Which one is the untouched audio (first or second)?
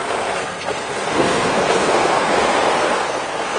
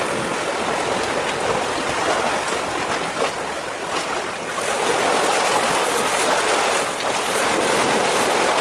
second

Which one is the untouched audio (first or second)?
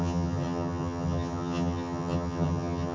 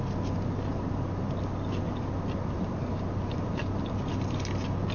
second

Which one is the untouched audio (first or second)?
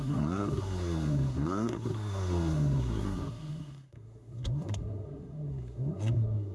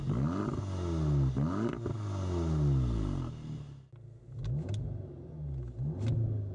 second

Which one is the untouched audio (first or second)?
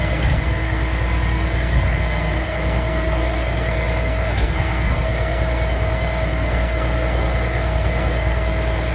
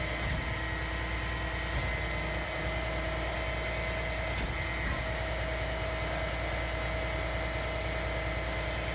second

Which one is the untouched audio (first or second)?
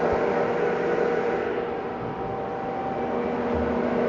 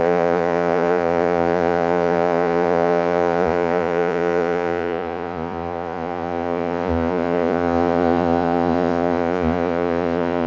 first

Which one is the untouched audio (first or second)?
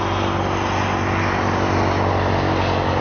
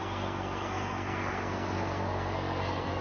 first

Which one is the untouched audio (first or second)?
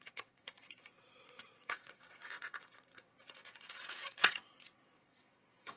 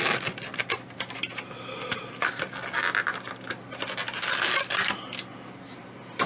second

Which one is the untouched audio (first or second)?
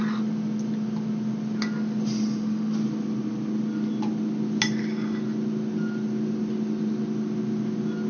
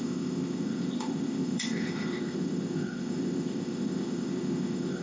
first